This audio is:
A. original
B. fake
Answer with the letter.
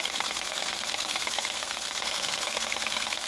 B